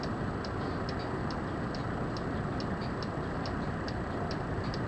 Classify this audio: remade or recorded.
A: recorded